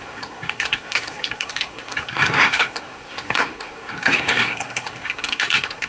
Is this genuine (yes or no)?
no